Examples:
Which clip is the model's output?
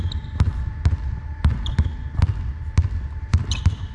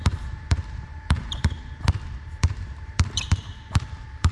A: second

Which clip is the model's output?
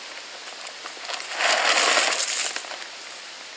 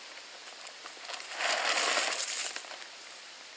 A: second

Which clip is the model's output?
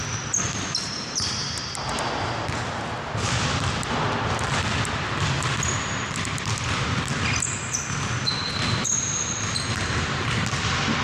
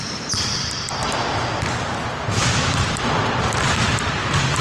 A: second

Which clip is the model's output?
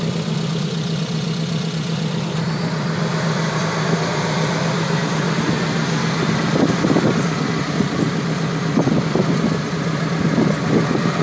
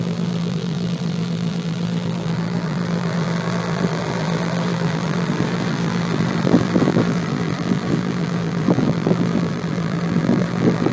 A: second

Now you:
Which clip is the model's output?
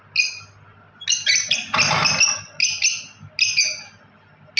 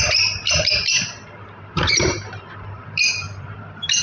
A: second